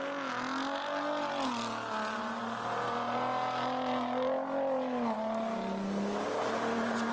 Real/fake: real